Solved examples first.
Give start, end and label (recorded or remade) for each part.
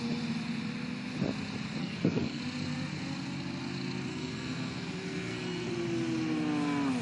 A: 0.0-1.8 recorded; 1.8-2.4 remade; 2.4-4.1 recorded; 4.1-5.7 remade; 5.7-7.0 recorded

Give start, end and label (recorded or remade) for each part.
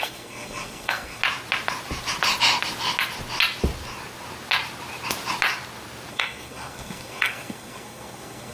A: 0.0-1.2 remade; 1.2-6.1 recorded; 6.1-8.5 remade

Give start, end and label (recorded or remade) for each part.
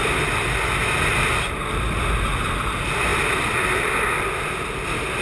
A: 0.0-5.2 recorded